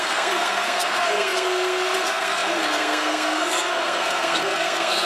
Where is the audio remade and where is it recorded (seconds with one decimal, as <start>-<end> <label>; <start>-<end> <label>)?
0.0-5.1 remade